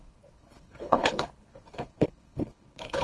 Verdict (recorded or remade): remade